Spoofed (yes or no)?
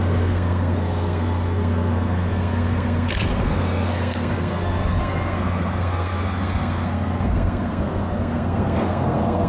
yes